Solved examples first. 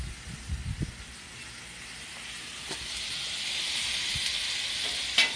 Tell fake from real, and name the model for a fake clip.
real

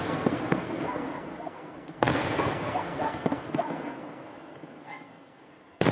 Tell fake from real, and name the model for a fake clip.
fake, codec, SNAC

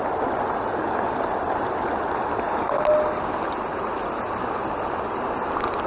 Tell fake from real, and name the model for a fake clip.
real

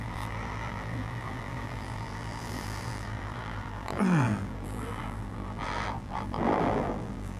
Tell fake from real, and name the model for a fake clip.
fake, vocoder, BigVGAN v2